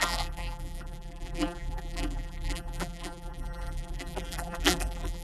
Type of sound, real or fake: fake